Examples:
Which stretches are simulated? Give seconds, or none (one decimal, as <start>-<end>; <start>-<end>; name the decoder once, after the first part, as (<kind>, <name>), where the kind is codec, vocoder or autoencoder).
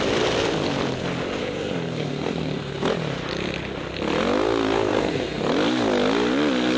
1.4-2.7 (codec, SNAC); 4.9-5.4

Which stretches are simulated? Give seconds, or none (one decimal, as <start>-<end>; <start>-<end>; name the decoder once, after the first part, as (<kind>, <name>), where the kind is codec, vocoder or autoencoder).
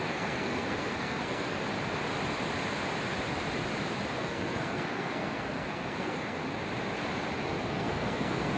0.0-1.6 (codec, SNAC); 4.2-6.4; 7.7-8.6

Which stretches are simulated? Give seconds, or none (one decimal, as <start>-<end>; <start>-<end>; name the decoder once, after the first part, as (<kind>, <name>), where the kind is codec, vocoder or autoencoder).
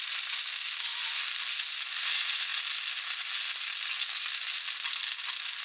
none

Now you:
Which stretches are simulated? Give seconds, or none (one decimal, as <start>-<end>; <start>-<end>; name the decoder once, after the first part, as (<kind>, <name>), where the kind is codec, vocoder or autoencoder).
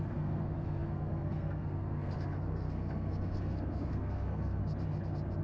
0.0-4.6 (codec, SNAC)